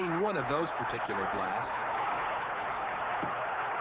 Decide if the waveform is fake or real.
fake